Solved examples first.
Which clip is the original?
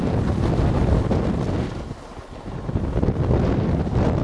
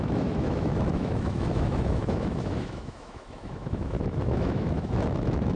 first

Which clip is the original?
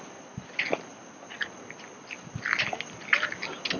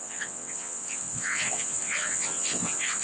first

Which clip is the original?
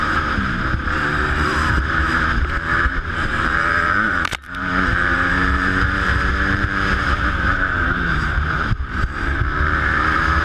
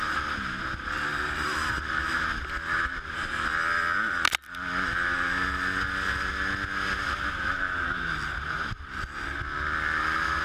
second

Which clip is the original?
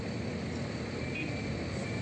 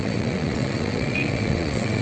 first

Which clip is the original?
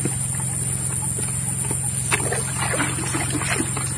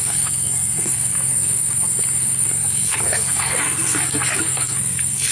first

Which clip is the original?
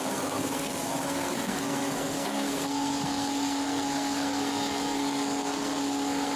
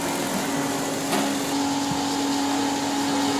second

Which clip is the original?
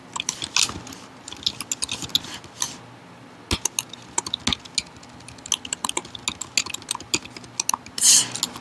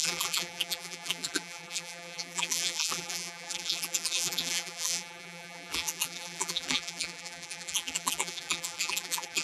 first